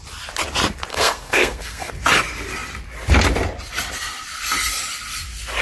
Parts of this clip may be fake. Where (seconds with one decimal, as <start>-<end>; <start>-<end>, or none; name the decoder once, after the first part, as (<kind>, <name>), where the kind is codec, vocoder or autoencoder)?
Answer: 0.9-1.9 (codec, SNAC)